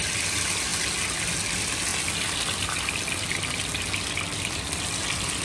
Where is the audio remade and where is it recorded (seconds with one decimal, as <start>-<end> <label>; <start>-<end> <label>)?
0.0-5.4 recorded